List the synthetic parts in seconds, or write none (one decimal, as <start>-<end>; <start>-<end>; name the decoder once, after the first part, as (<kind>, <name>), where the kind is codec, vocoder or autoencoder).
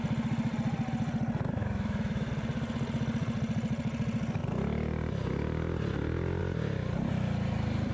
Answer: 1.6-2.3 (autoencoder, DAC-VAE)